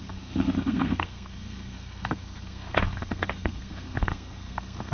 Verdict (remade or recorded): remade